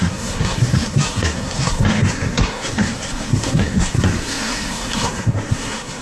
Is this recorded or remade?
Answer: remade